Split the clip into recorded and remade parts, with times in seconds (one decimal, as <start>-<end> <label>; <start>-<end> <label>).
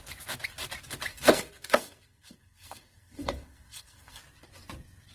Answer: 0.0-1.1 recorded; 1.1-4.2 remade; 4.2-5.1 recorded